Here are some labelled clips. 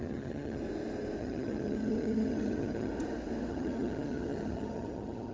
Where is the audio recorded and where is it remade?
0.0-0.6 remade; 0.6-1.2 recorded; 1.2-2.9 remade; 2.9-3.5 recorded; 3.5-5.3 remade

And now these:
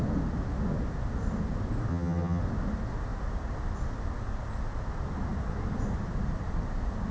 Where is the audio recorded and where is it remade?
0.0-1.9 recorded; 1.9-2.4 remade; 2.4-7.1 recorded

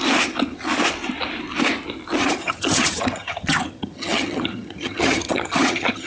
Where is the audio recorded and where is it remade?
0.0-2.2 recorded; 2.2-6.1 remade

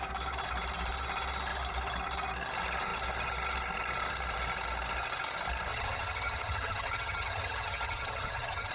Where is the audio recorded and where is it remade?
0.0-5.7 recorded; 5.7-8.7 remade

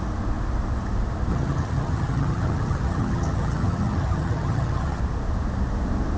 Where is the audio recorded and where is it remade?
0.0-1.3 recorded; 1.3-5.0 remade; 5.0-6.2 recorded